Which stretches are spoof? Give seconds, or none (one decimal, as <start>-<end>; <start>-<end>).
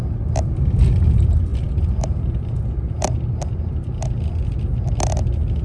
0.5-1.0